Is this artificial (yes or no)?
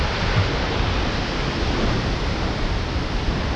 no